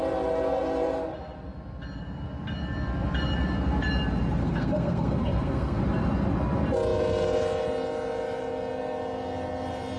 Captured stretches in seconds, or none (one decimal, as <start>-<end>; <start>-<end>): 0.0-4.4; 5.8-10.0